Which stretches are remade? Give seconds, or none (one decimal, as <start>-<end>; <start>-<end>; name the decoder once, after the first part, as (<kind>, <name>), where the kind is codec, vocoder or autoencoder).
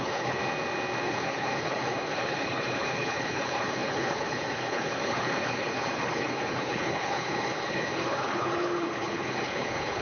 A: 0.0-0.4 (codec, HILCodec); 1.0-10.0